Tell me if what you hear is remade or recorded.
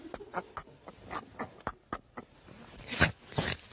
recorded